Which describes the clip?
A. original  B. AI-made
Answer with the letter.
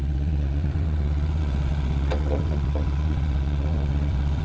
B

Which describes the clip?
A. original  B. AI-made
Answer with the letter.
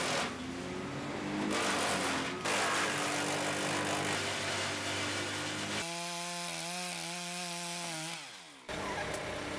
A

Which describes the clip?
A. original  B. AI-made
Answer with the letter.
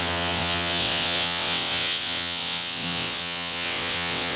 B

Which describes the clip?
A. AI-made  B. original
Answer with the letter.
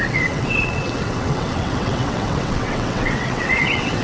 A